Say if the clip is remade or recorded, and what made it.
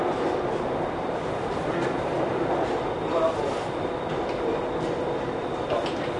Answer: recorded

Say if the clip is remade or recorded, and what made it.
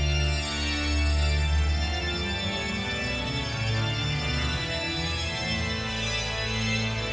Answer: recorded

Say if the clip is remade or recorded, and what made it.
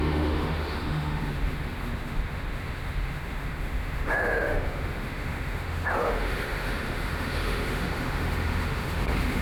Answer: remade, autoencoder, DAC-VAE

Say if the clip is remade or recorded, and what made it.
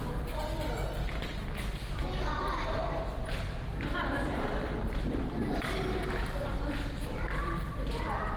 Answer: remade, vocoder, BigVGAN v2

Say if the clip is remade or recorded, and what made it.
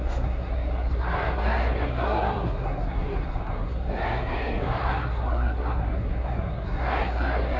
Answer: remade, codec, SNAC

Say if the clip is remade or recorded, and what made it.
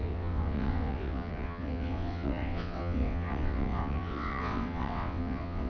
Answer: remade, vocoder, WaveNeXt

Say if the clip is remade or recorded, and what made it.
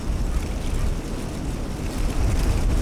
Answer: recorded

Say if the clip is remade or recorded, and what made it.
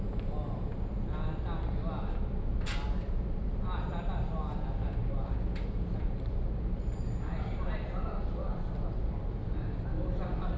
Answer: recorded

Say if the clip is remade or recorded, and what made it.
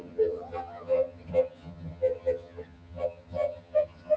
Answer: remade, vocoder, HiFi-GAN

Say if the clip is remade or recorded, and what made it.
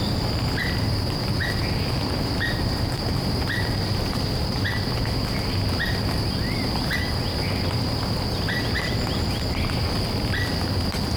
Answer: recorded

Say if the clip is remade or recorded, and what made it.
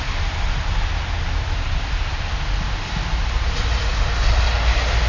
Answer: recorded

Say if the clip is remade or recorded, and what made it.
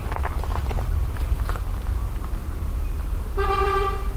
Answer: recorded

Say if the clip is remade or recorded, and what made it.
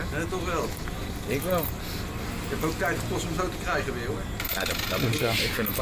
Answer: recorded